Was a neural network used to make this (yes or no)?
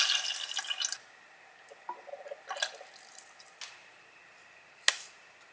no